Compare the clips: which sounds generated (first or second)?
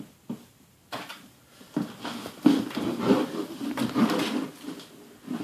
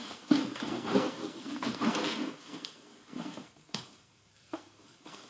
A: second